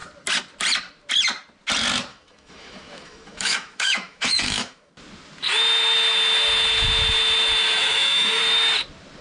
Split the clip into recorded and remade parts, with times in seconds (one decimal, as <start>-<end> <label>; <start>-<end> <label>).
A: 0.0-2.1 recorded; 2.1-4.9 remade; 4.9-7.8 recorded; 7.8-8.4 remade; 8.4-9.2 recorded